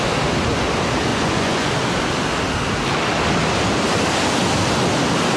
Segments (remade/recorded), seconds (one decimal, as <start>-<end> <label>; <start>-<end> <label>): 0.0-1.1 recorded; 1.1-1.7 remade; 1.7-5.4 recorded